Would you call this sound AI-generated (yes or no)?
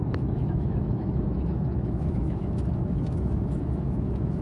yes